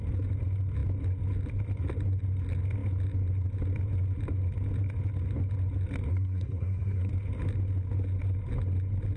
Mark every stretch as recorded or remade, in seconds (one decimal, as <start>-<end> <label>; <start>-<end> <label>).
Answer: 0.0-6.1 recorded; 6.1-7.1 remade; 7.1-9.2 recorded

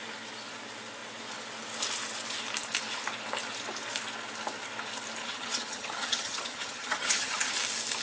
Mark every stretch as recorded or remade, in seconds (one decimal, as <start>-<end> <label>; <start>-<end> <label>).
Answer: 0.0-5.2 recorded; 5.2-7.5 remade; 7.5-8.0 recorded

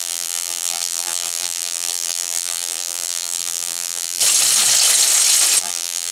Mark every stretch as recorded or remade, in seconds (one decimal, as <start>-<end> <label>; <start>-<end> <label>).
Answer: 0.0-4.2 remade; 4.2-5.6 recorded; 5.6-6.1 remade

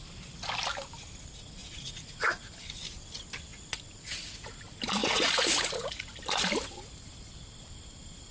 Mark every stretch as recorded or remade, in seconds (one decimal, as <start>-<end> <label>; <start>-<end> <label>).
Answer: 0.0-1.6 recorded; 1.6-2.2 remade; 2.2-3.5 recorded; 3.5-4.5 remade; 4.5-5.0 recorded; 5.0-6.0 remade; 6.0-8.3 recorded

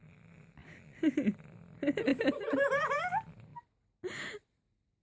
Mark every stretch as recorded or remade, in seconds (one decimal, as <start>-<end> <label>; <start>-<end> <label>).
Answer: 0.0-5.0 recorded